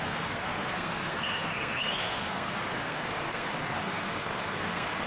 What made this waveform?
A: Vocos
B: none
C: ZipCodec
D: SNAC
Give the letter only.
D